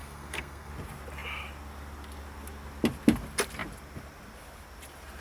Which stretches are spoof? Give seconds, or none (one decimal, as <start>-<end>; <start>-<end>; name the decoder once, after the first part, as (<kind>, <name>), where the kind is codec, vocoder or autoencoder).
0.0-0.7 (codec, SNAC)